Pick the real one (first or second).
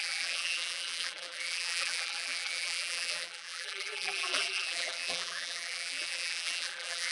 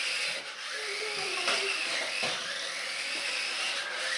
second